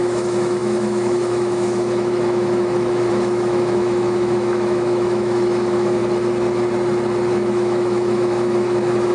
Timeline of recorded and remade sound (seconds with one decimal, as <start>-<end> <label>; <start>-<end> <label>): 0.0-6.0 remade; 6.0-7.3 recorded; 7.3-9.1 remade